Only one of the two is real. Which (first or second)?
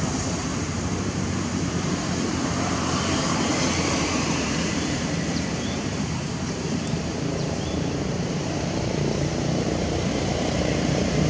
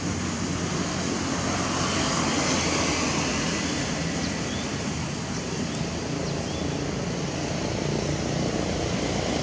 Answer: second